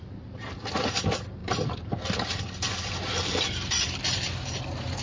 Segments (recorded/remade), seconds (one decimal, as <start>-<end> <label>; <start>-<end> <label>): 0.0-1.4 recorded; 1.4-2.4 remade; 2.4-5.0 recorded

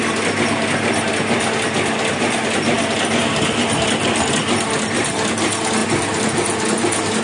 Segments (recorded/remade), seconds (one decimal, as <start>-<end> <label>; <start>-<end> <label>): 0.0-7.2 recorded

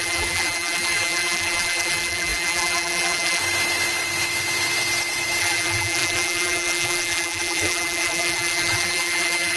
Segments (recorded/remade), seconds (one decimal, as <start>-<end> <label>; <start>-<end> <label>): 0.0-3.4 remade; 3.4-5.4 recorded; 5.4-9.6 remade